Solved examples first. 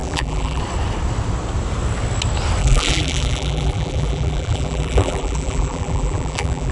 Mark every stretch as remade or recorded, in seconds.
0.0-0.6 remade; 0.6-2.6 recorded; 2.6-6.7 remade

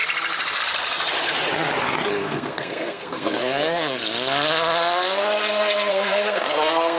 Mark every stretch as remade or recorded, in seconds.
0.0-2.2 recorded; 2.2-4.0 remade; 4.0-5.9 recorded; 5.9-7.0 remade